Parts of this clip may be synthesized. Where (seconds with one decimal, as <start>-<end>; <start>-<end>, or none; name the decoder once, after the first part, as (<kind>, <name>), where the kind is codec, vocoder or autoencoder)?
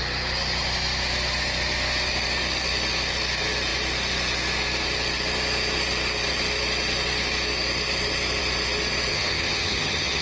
9.1-10.2 (vocoder, HiFi-GAN)